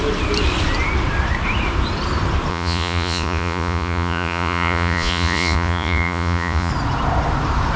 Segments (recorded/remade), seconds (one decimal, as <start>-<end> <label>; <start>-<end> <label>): 0.0-2.5 recorded; 2.5-6.7 remade; 6.7-7.8 recorded